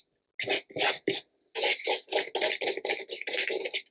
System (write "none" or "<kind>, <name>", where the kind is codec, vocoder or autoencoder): none